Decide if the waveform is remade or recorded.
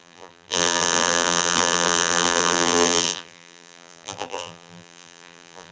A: remade